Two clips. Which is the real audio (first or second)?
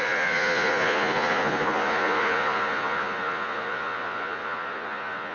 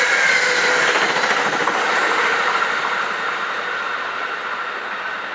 second